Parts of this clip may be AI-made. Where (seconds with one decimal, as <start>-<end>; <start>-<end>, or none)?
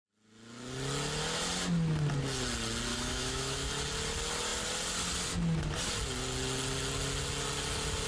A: 2.9-3.7